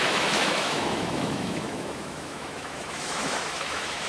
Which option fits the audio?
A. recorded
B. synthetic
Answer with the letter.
B